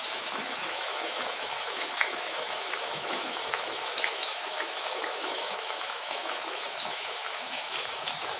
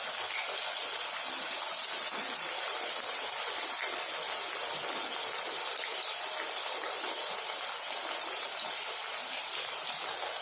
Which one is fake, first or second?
first